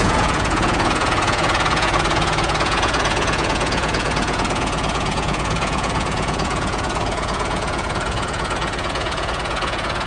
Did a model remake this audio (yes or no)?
yes